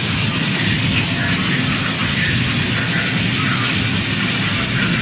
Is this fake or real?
real